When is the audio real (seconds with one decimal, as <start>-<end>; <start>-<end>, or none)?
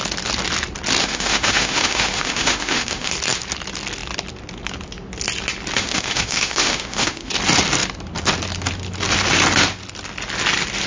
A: 0.0-1.0; 3.1-5.8; 7.3-10.9